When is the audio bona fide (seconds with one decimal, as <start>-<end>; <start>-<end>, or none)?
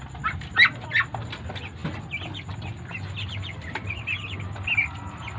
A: 0.0-5.4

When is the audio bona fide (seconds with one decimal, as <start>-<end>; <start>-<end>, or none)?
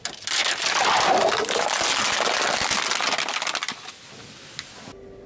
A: 0.0-5.3